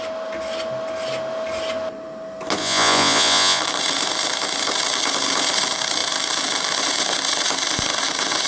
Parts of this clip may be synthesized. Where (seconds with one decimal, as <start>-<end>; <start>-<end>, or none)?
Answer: 2.6-3.6

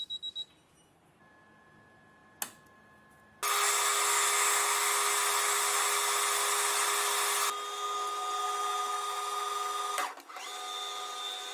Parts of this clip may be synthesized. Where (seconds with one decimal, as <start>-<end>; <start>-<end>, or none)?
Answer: none

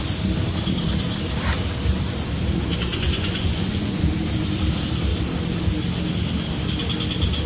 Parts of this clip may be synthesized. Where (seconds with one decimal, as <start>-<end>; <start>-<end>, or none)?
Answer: 2.9-4.0